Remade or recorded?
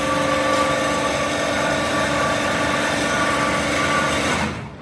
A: recorded